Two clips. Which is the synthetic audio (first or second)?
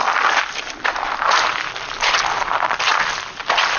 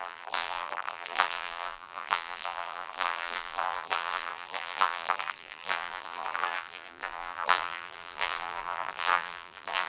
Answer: second